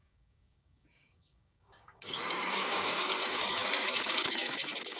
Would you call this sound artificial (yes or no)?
yes